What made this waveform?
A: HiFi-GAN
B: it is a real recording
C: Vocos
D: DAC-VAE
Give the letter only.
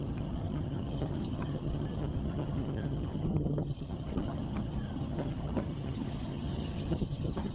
A